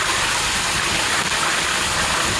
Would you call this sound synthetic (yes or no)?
no